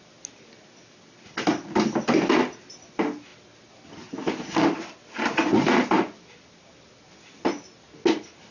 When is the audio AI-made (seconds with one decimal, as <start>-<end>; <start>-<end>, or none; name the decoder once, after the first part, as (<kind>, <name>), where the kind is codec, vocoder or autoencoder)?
none